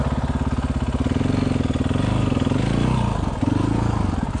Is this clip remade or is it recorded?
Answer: recorded